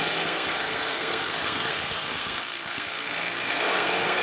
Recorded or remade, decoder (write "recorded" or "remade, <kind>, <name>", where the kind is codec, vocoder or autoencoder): remade, codec, SNAC